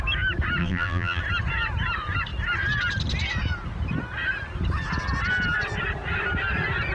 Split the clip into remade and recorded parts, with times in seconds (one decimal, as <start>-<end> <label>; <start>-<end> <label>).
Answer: 0.0-0.6 recorded; 0.6-1.2 remade; 1.2-6.9 recorded